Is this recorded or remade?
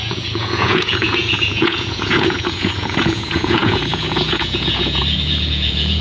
remade